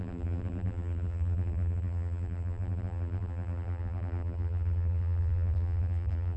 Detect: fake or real fake